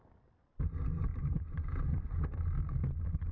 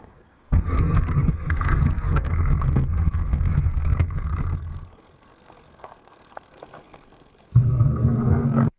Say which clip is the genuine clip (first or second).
first